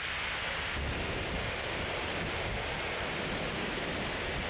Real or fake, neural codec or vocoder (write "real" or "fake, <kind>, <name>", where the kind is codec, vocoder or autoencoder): real